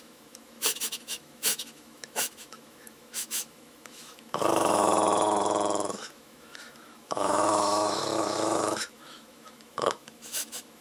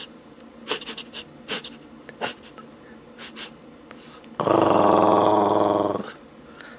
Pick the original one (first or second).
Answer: second